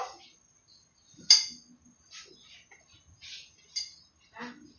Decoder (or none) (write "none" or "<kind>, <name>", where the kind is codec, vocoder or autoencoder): none